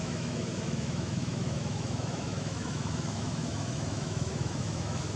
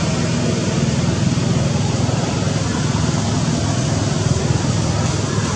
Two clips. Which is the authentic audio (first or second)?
second